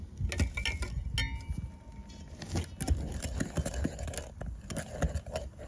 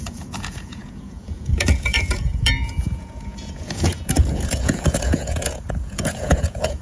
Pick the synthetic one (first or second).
second